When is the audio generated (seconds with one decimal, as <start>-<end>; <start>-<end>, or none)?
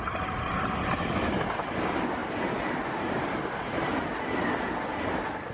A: none